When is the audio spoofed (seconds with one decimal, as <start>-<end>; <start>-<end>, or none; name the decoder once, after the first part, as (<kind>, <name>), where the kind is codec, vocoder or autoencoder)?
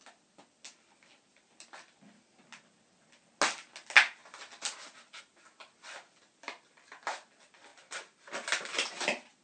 7.7-8.2 (vocoder, BigVGAN v2)